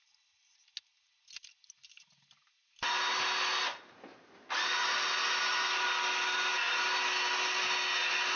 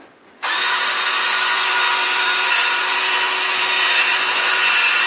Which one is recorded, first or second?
first